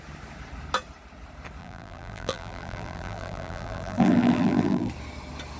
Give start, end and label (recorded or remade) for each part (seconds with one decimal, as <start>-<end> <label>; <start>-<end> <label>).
0.0-1.6 recorded; 1.6-4.9 remade; 4.9-5.6 recorded